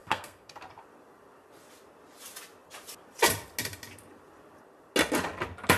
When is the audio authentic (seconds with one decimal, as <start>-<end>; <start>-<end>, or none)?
0.6-5.8